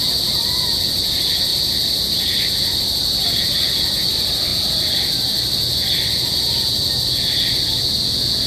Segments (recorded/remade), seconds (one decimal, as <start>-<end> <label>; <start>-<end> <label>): 0.0-8.5 recorded